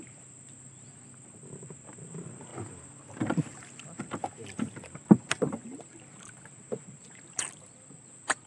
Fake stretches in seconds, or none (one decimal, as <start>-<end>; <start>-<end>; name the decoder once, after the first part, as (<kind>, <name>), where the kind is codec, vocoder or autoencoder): 0.0-2.5 (vocoder, BigVGAN v2); 3.1-8.5